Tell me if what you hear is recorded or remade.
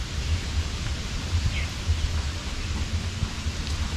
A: recorded